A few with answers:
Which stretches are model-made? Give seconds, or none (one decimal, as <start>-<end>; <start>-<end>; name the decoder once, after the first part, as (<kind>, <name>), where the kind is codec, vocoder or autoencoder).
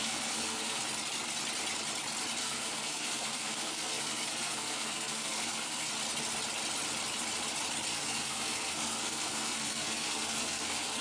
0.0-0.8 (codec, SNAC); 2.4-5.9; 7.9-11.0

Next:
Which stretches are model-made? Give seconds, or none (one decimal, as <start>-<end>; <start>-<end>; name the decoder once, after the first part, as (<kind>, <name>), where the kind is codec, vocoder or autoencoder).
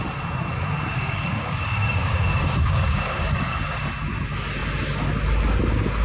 0.9-3.8 (codec, DAC)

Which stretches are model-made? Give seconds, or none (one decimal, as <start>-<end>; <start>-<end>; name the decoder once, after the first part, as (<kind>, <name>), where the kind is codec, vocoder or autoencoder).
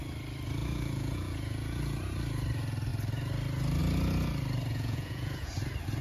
0.6-1.8 (vocoder, Vocos); 4.7-5.5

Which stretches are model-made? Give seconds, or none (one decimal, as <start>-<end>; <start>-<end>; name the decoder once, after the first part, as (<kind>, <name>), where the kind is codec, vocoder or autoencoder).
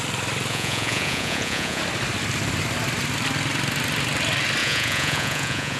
0.5-1.8 (vocoder, Vocos); 4.6-5.8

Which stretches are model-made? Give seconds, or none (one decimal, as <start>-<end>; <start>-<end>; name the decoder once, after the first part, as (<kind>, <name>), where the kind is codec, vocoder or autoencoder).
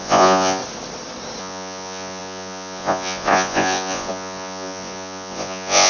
0.0-0.6 (vocoder, Vocos); 1.4-5.9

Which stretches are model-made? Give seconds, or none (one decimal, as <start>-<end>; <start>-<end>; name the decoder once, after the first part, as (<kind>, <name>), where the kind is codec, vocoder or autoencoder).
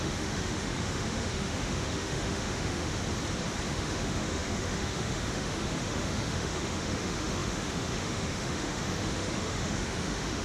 0.0-3.0 (autoencoder, DAC-VAE); 3.7-10.4